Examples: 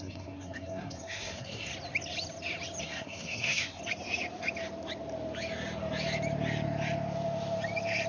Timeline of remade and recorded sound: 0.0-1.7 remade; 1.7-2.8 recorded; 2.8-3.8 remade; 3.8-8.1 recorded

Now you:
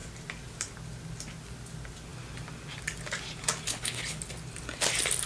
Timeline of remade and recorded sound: 0.0-3.7 recorded; 3.7-4.2 remade; 4.2-5.3 recorded

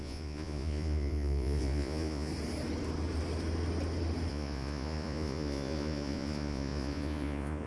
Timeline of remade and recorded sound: 0.0-2.3 remade; 2.3-4.3 recorded; 4.3-7.7 remade

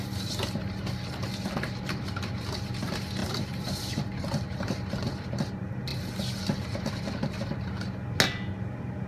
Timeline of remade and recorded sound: 0.0-3.2 recorded; 3.2-4.9 remade; 4.9-9.1 recorded

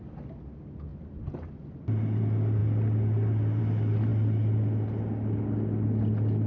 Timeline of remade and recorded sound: 0.0-6.5 recorded

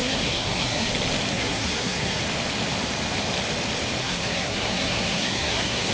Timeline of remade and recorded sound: 0.0-0.9 remade; 0.9-1.3 recorded; 1.3-2.2 remade; 2.2-4.0 recorded; 4.0-5.9 remade